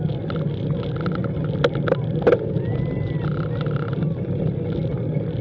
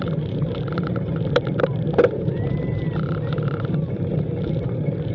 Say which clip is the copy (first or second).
second